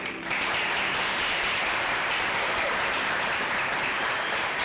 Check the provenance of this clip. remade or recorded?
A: remade